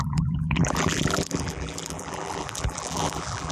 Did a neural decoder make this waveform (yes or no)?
yes